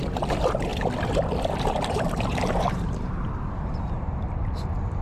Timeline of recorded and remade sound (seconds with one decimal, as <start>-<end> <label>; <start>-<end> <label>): 0.0-0.7 remade; 0.7-1.5 recorded; 1.5-5.0 remade

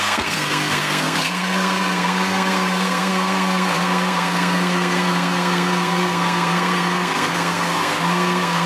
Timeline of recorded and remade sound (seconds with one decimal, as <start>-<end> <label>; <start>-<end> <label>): 0.0-8.7 remade

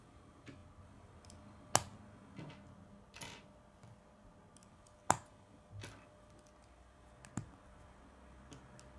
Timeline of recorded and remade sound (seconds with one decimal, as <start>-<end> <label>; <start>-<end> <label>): 0.0-9.0 recorded